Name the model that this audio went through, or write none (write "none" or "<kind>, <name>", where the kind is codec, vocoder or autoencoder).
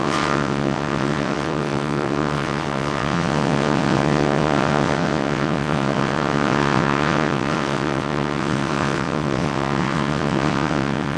vocoder, WaveNeXt